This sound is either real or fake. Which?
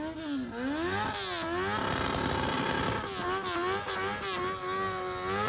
real